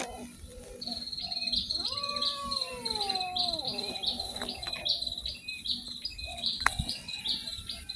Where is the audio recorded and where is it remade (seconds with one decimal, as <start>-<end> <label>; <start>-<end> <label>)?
0.0-6.3 recorded; 6.3-7.2 remade; 7.2-8.0 recorded

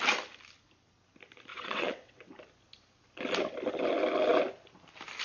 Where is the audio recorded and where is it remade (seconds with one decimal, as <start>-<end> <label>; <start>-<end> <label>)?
0.0-1.5 recorded; 1.5-2.3 remade; 2.3-5.2 recorded